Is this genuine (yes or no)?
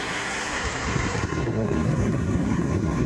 no